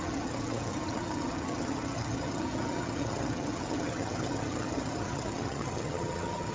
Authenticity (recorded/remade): remade